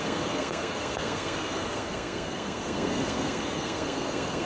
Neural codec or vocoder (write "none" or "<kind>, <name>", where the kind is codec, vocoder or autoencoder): codec, SNAC